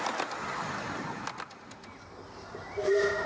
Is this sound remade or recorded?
recorded